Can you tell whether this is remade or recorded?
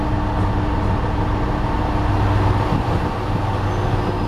recorded